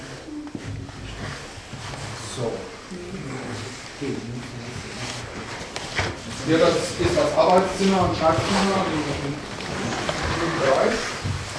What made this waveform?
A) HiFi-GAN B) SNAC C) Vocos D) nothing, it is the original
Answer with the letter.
D